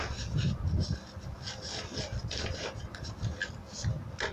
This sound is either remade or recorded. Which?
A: recorded